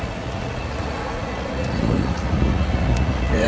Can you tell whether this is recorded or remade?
remade